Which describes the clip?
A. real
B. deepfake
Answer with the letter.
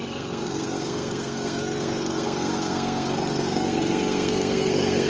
B